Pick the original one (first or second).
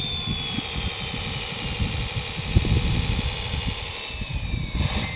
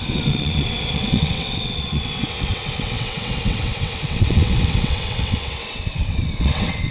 first